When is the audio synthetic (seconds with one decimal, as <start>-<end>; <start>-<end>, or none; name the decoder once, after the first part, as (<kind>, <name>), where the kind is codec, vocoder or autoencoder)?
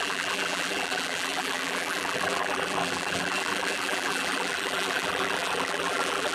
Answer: 0.0-6.3 (vocoder, BigVGAN v2)